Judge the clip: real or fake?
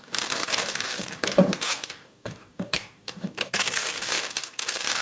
fake